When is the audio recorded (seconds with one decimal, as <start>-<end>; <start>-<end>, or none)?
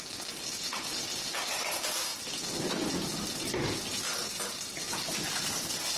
0.0-6.0